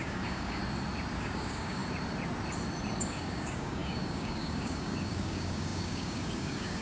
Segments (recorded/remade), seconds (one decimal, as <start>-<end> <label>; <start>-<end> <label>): 0.0-0.6 remade; 0.6-1.2 recorded; 1.2-1.8 remade; 1.8-3.0 recorded; 3.0-6.8 remade